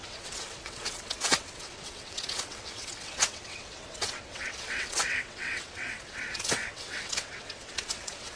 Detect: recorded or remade remade